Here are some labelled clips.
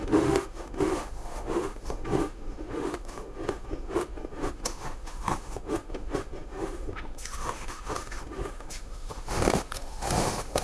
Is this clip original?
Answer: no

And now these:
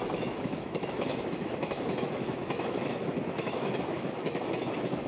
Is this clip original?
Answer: no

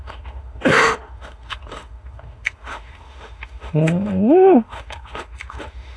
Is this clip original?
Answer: no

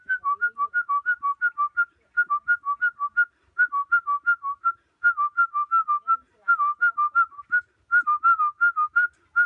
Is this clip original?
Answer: yes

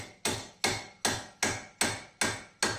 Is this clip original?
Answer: yes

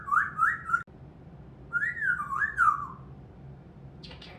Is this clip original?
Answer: yes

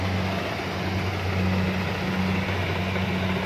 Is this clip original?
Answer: yes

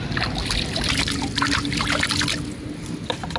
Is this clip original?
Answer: yes